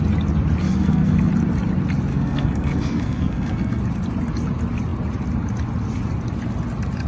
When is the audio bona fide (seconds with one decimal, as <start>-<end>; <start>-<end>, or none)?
0.0-0.6; 1.3-2.1; 3.8-7.1